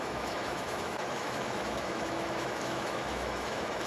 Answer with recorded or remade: remade